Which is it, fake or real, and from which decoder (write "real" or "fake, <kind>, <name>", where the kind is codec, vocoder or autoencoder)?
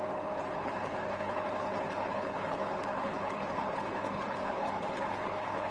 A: fake, codec, HILCodec